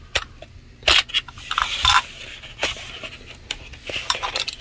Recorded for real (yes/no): yes